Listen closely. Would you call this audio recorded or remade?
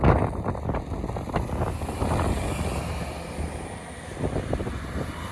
recorded